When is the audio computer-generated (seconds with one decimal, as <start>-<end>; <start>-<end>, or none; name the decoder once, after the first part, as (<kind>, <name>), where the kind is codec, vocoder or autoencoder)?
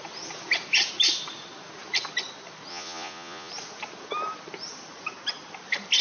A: 2.7-3.5 (vocoder, Vocos)